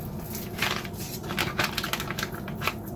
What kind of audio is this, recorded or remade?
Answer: recorded